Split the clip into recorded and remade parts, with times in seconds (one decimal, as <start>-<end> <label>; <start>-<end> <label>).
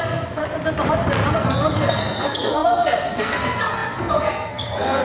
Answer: 0.0-0.4 remade; 0.4-1.3 recorded; 1.3-5.0 remade